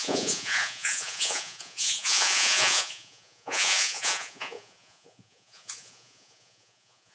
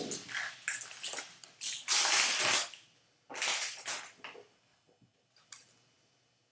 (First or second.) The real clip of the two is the second